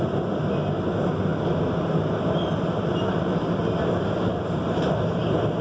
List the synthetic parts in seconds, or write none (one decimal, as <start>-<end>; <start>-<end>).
none